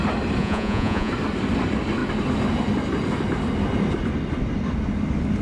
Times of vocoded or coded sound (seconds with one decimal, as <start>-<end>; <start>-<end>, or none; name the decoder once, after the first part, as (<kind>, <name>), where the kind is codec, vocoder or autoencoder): 0.4-1.1 (vocoder, Vocos)